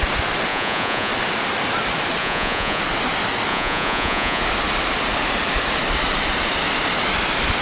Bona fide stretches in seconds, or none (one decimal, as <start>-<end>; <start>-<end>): 0.0-0.5; 1.1-2.2; 2.8-3.5; 4.4-7.6